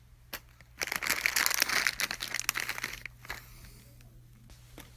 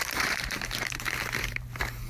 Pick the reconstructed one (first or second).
second